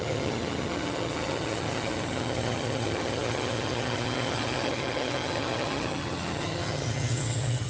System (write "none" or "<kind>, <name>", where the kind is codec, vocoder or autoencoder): vocoder, HiFi-GAN